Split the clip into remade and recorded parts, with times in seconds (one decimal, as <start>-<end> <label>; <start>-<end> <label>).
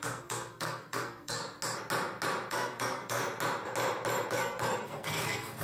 0.0-1.4 remade; 1.4-2.5 recorded; 2.5-3.2 remade; 3.2-4.3 recorded; 4.3-5.6 remade